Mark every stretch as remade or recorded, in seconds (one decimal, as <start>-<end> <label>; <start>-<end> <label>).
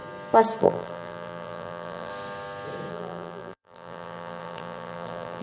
0.0-0.6 recorded; 0.6-2.1 remade; 2.1-2.9 recorded; 2.9-5.4 remade